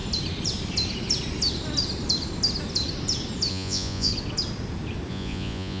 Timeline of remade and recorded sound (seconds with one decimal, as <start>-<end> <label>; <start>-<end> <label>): 0.0-3.5 recorded; 3.5-4.1 remade; 4.1-5.1 recorded; 5.1-5.8 remade